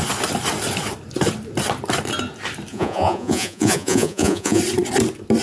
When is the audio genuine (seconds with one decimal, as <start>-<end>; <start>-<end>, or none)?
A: 0.0-2.7; 4.6-5.4